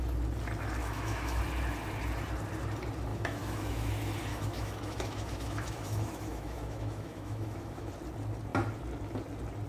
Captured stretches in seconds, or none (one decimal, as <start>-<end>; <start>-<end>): 0.0-0.8; 1.4-3.1; 3.9-4.3; 7.9-9.7